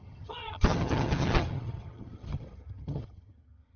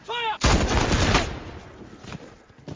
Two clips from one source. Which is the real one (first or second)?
second